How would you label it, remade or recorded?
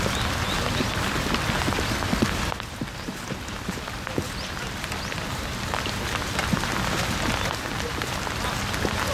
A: recorded